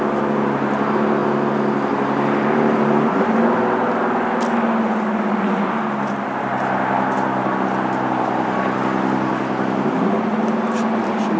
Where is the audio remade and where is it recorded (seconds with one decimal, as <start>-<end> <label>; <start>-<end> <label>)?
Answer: 0.0-11.4 recorded

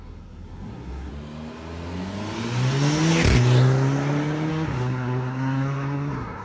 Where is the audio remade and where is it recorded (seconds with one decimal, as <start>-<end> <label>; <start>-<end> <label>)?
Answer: 0.0-1.1 remade; 1.1-4.5 recorded; 4.5-6.4 remade

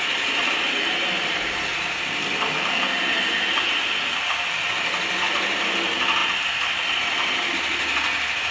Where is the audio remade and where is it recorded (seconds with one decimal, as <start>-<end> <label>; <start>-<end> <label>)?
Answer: 0.0-8.5 recorded

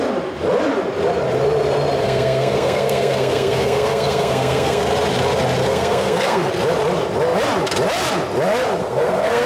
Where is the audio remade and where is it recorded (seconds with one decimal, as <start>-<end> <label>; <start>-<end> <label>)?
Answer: 0.0-2.0 recorded; 2.0-4.8 remade; 4.8-5.7 recorded; 5.7-6.5 remade; 6.5-8.8 recorded; 8.8-9.5 remade

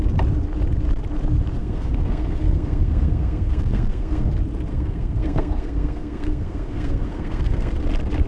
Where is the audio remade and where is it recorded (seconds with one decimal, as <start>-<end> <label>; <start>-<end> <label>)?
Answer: 0.0-1.6 recorded; 1.6-4.3 remade; 4.3-4.7 recorded; 4.7-7.7 remade; 7.7-8.3 recorded

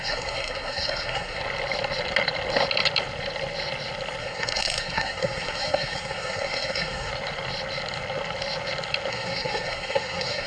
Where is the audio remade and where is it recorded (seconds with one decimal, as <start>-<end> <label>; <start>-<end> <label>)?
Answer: 0.0-1.4 remade; 1.4-4.2 recorded; 4.2-7.1 remade; 7.1-9.1 recorded; 9.1-10.5 remade

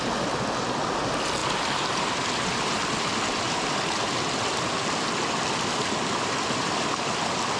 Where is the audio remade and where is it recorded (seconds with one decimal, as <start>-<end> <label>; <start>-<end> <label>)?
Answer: 0.0-7.6 recorded

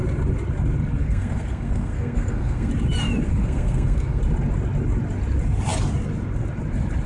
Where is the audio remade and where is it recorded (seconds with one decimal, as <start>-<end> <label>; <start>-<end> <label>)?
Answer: 0.0-1.0 recorded; 1.0-2.7 remade; 2.7-3.3 recorded; 3.3-4.2 remade; 4.2-7.1 recorded